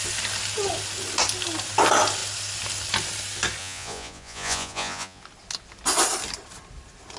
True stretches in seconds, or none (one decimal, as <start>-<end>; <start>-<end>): 0.0-3.6; 5.2-7.2